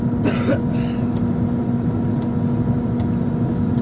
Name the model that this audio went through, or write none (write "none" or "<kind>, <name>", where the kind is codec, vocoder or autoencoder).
none